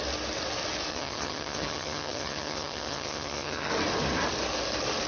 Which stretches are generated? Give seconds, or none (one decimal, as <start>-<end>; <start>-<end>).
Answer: 0.9-3.7